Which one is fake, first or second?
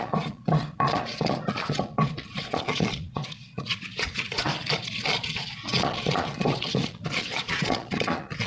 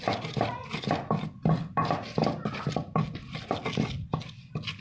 first